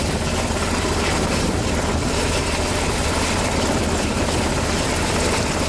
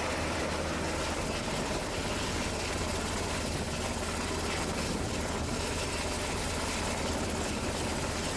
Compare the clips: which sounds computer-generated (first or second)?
first